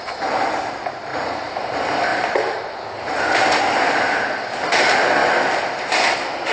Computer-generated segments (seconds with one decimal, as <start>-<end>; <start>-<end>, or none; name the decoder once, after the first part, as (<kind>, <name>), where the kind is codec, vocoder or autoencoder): 1.1-1.7 (vocoder, Vocos)